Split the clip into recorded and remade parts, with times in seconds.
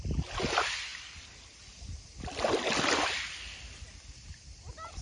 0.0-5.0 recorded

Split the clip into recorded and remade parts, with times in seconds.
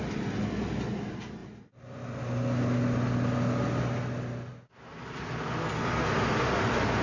0.0-7.0 recorded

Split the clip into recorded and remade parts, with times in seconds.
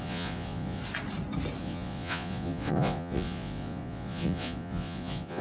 0.0-0.8 remade; 0.8-1.6 recorded; 1.6-5.4 remade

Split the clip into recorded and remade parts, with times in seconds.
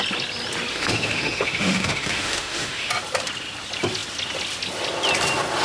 0.0-0.7 recorded; 0.7-2.9 remade; 2.9-5.6 recorded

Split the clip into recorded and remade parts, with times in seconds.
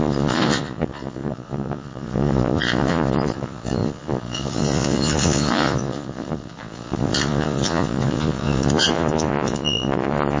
0.0-10.4 remade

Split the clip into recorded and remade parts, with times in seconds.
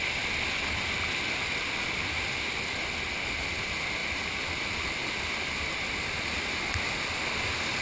0.0-7.8 recorded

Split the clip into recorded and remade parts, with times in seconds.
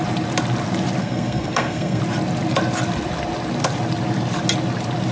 0.0-1.0 recorded; 1.0-2.0 remade; 2.0-5.1 recorded